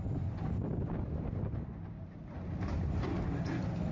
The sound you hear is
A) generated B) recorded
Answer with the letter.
B